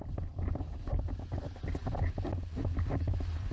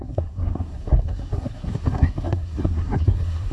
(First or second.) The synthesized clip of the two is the second